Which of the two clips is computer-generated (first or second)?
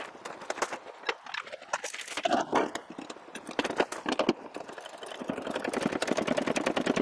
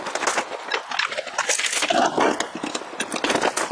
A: first